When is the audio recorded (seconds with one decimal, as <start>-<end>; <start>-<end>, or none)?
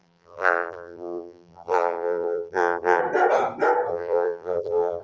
3.0-3.9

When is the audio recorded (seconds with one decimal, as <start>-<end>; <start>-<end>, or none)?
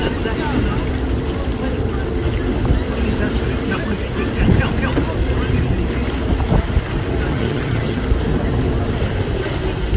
0.0-7.3; 8.0-10.0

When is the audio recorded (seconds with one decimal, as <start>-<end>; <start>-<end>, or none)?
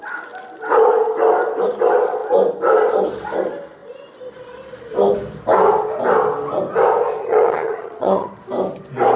0.0-7.2; 8.4-9.2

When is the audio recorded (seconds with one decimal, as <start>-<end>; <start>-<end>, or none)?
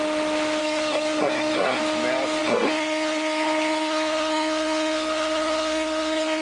0.0-0.6; 1.8-2.4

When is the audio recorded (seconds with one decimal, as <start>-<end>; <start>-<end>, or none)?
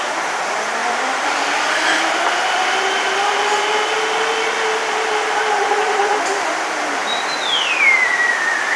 0.0-0.8; 5.7-8.8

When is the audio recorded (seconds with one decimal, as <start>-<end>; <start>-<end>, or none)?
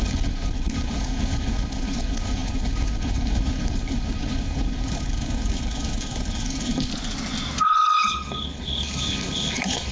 6.9-7.6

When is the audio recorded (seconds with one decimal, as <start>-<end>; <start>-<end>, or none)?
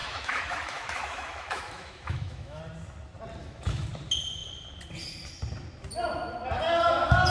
2.6-3.4; 3.9-7.3